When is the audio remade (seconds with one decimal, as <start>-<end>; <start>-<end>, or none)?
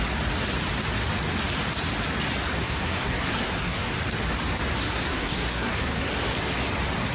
2.6-3.9; 4.7-6.1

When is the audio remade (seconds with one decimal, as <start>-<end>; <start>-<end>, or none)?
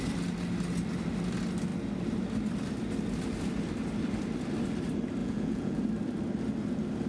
5.2-5.8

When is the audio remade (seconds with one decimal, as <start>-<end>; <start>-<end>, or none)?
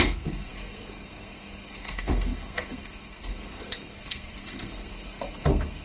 0.0-5.8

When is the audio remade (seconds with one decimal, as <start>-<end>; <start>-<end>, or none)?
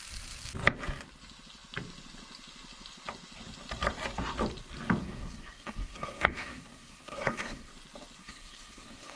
5.0-7.7; 8.2-9.2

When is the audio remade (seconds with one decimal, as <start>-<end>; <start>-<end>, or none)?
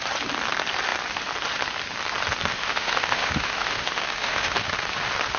2.5-4.7